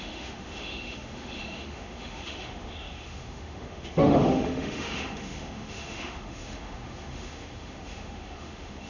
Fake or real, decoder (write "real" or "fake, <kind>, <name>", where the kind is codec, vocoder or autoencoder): fake, autoencoder, DAC-VAE